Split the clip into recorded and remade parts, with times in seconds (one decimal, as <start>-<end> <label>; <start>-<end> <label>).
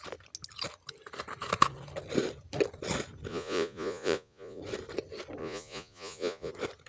0.0-3.3 recorded; 3.3-4.6 remade; 4.6-5.4 recorded; 5.4-6.5 remade; 6.5-6.9 recorded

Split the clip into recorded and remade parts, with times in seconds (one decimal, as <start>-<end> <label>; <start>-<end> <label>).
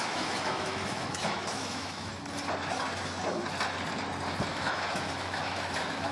0.0-2.1 remade; 2.1-4.5 recorded; 4.5-6.1 remade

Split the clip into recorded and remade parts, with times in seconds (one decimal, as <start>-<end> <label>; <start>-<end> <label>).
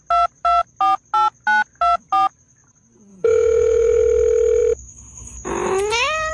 0.0-3.1 recorded; 3.1-4.0 remade; 4.0-6.3 recorded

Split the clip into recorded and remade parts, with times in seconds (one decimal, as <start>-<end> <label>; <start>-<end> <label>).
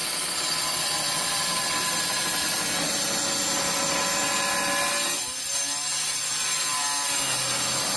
0.0-8.0 recorded